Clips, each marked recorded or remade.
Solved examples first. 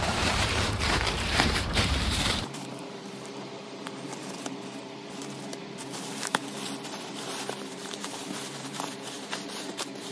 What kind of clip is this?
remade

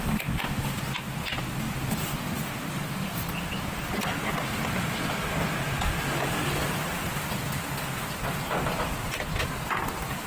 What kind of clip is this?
recorded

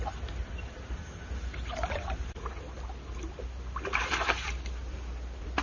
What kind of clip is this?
recorded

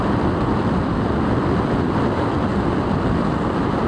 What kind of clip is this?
recorded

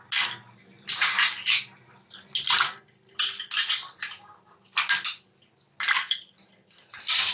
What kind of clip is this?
recorded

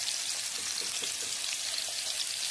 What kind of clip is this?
recorded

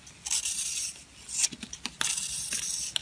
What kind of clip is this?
recorded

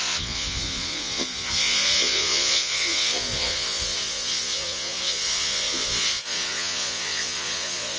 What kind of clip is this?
remade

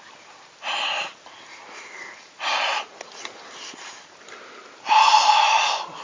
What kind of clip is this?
recorded